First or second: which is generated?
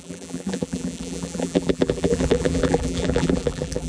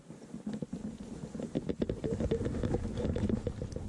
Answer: first